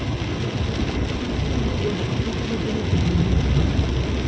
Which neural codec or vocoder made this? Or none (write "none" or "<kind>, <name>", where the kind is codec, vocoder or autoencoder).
none